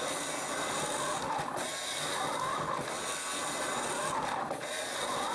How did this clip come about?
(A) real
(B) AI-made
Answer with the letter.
A